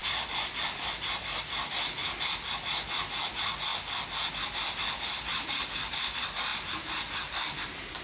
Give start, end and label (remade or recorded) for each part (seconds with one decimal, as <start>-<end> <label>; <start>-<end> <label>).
0.0-5.3 recorded; 5.3-5.9 remade; 5.9-6.5 recorded; 6.5-8.0 remade